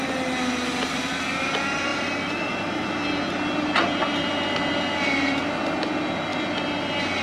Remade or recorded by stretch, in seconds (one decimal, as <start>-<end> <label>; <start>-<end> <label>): 0.0-7.2 recorded